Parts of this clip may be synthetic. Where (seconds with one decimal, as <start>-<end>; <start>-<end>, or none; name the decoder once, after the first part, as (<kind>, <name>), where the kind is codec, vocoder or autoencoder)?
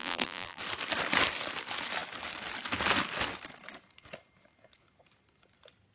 0.0-0.6 (vocoder, BigVGAN v2)